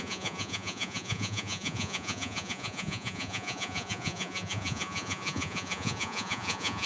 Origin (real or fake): fake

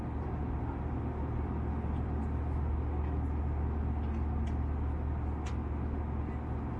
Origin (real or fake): real